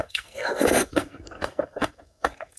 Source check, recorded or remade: remade